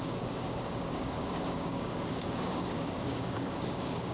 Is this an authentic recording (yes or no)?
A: no